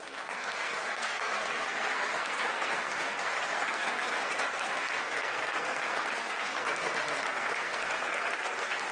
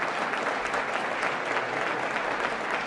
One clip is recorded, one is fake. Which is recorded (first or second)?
second